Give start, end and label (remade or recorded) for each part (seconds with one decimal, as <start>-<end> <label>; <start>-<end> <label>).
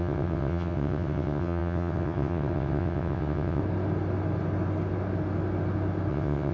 0.0-3.6 remade; 3.6-6.1 recorded; 6.1-6.5 remade